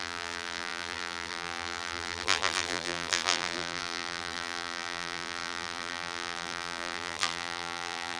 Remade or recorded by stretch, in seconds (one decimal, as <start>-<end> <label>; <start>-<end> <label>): 0.0-8.2 remade